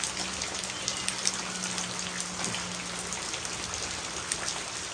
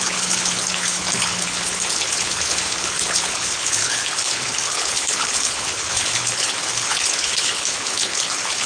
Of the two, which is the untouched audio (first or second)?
first